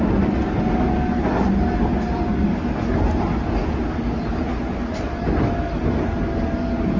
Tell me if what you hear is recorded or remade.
recorded